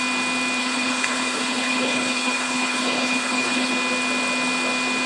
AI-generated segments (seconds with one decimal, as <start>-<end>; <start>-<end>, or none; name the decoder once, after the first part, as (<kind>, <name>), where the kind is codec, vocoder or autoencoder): 0.6-3.7 (codec, HILCodec)